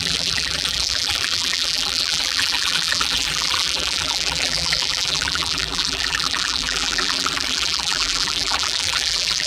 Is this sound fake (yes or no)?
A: yes